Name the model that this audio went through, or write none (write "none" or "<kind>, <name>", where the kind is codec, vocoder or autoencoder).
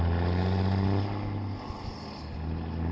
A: none